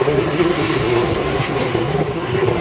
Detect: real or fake fake